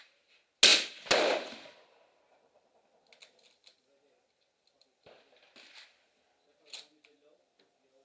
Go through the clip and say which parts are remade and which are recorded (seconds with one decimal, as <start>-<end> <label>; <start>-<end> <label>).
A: 0.0-8.0 recorded